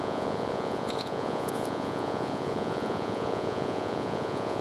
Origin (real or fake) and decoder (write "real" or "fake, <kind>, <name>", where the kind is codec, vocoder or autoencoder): fake, vocoder, Vocos